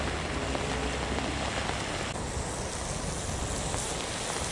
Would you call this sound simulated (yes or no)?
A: no